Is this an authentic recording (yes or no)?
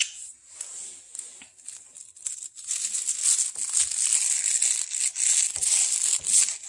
yes